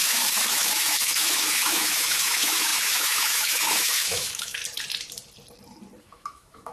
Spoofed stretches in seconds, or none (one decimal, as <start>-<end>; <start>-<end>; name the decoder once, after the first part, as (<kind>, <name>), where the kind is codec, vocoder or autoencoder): 0.0-4.6 (autoencoder, DAC-VAE); 6.0-6.7